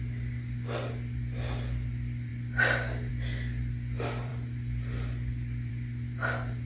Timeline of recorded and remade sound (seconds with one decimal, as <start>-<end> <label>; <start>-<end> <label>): 0.0-6.7 recorded